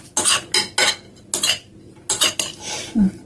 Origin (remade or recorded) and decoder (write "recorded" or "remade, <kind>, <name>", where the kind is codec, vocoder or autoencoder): recorded